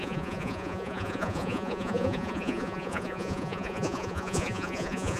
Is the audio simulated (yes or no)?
yes